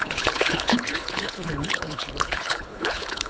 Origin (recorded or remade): remade